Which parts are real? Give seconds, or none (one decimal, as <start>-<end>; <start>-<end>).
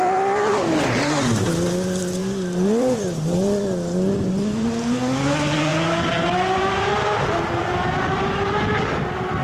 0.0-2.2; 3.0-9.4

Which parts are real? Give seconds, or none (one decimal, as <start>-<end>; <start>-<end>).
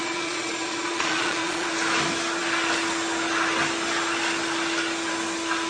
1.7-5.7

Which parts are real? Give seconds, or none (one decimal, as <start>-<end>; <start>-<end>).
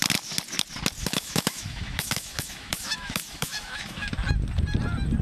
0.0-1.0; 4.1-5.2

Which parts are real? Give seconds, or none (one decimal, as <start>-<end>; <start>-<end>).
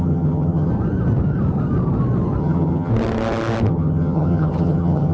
0.7-2.4; 2.9-3.7